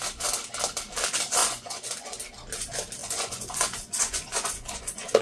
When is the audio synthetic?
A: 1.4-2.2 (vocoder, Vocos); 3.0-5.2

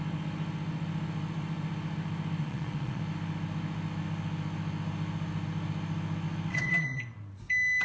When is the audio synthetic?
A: 2.4-3.0 (vocoder, Vocos); 6.5-7.0

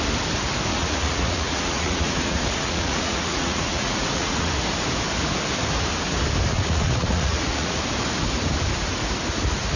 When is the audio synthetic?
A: 0.7-4.5 (vocoder, Vocos); 6.5-7.8

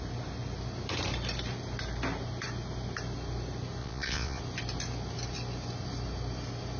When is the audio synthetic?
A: 3.8-4.4 (vocoder, Vocos)

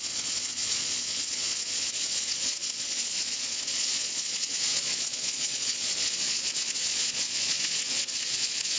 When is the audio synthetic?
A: 0.0-8.8 (vocoder, Vocos)

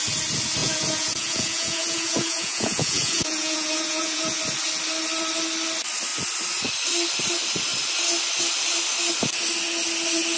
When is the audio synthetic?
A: 0.6-4.4 (vocoder, Vocos)

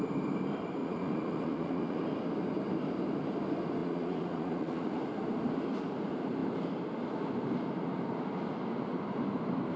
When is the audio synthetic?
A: 0.8-2.0 (vocoder, Vocos); 3.8-5.0